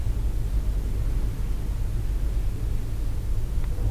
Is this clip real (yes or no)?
yes